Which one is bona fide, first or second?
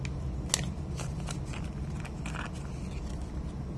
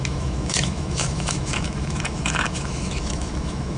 first